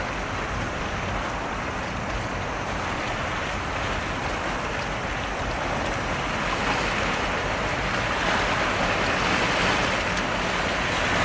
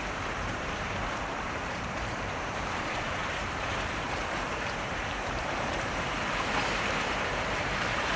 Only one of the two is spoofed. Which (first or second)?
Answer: second